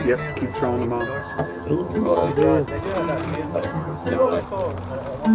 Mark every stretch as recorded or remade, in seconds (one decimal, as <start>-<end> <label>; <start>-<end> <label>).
0.0-1.2 recorded; 1.2-2.3 remade; 2.3-3.5 recorded; 3.5-4.4 remade; 4.4-5.3 recorded

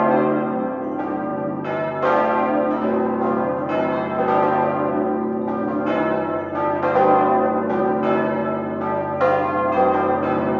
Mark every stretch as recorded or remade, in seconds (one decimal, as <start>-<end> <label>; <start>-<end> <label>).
0.0-1.3 recorded; 1.3-1.9 remade; 1.9-5.6 recorded; 5.6-7.8 remade; 7.8-10.6 recorded